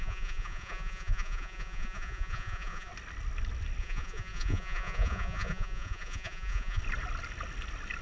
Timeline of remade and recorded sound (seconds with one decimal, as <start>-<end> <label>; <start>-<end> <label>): 0.0-2.9 remade; 2.9-3.8 recorded; 3.8-6.8 remade; 6.8-8.0 recorded